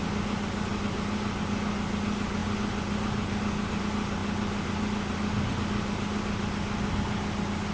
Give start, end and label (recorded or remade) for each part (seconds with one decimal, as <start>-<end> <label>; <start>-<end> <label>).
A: 0.0-7.7 recorded